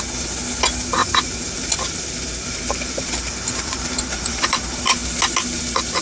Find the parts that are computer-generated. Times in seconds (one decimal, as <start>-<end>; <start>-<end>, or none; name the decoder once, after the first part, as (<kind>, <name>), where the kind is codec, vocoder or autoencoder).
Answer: 1.0-4.6 (vocoder, BigVGAN v2)